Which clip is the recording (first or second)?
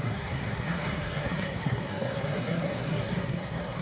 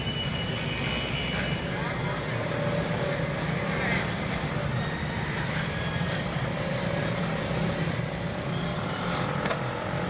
second